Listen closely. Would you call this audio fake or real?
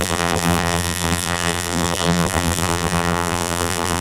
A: fake